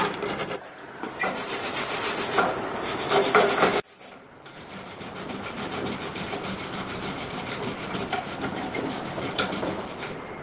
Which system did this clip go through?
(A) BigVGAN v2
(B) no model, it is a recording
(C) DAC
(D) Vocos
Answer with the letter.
A